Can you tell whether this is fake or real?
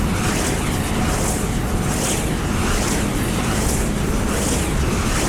real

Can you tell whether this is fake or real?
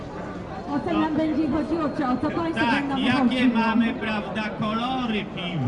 real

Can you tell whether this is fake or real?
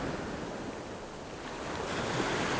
real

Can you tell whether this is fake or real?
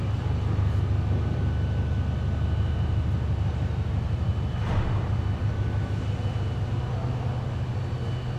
real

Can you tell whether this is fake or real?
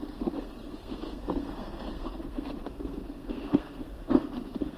fake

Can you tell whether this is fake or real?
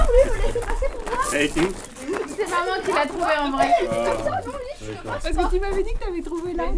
real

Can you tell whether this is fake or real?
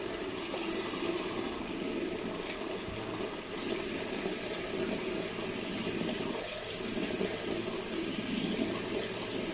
real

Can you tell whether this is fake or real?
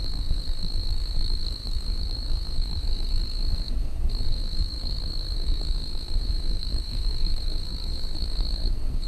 fake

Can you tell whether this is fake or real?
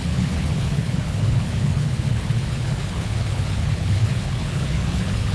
fake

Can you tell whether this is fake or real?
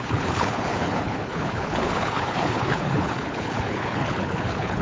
fake